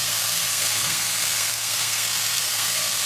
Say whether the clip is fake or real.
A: fake